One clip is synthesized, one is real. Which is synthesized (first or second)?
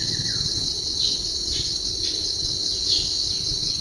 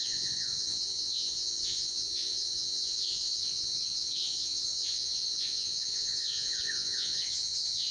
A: second